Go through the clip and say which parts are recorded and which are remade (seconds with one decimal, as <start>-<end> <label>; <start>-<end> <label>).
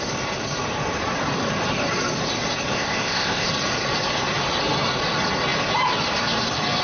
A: 0.0-2.7 recorded; 2.7-3.5 remade; 3.5-6.8 recorded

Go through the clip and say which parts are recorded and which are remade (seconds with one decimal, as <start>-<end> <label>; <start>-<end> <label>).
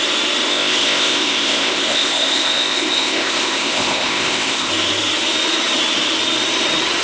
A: 0.0-0.5 recorded; 0.5-4.7 remade; 4.7-7.0 recorded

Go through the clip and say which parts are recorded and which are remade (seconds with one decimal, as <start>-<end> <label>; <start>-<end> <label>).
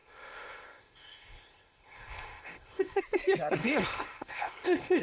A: 0.0-3.0 remade; 3.0-3.6 recorded; 3.6-5.0 remade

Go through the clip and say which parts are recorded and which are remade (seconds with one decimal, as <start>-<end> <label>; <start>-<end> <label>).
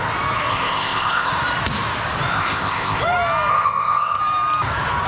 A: 0.0-0.5 recorded; 0.5-1.3 remade; 1.3-2.3 recorded; 2.3-3.0 remade; 3.0-3.5 recorded; 3.5-4.2 remade; 4.2-5.1 recorded